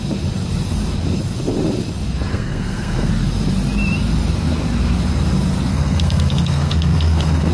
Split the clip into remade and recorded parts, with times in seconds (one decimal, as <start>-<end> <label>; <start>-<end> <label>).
0.0-2.3 recorded; 2.3-3.1 remade; 3.1-5.7 recorded; 5.7-7.5 remade